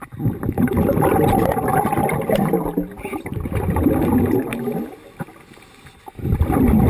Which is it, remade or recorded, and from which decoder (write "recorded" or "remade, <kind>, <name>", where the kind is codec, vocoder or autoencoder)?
recorded